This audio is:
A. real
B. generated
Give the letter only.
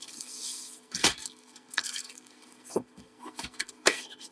B